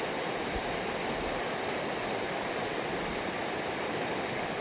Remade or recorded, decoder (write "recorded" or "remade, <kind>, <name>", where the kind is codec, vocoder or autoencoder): recorded